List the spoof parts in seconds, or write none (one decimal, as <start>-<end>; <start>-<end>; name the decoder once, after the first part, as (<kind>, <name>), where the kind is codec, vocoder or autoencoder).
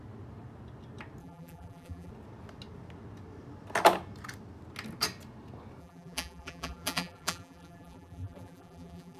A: 1.2-2.1 (vocoder, BigVGAN v2); 5.8-9.2